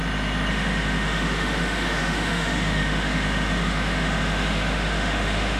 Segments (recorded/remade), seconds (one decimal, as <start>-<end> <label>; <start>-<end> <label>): 0.0-0.5 recorded; 0.5-5.6 remade